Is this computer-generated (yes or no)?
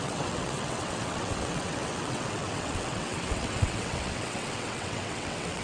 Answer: yes